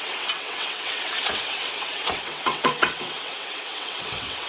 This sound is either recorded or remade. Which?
remade